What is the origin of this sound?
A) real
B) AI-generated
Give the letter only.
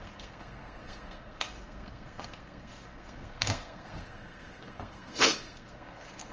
B